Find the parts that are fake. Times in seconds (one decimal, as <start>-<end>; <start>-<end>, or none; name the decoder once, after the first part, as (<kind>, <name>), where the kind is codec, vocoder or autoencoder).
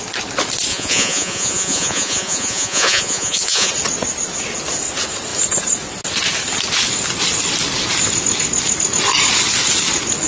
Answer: 0.7-3.7 (vocoder, Vocos)